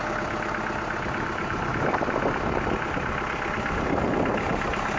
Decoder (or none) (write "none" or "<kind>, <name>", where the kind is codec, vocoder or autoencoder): none